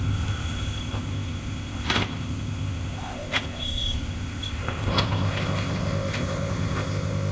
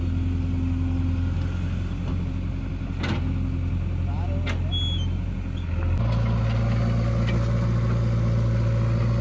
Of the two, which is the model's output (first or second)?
first